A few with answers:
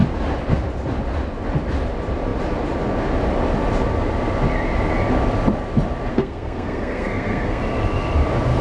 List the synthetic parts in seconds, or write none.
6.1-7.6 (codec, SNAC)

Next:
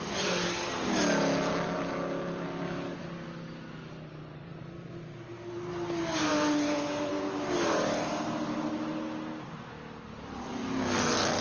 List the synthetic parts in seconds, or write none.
none